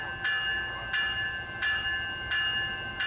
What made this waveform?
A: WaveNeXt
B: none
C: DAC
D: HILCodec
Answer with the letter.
B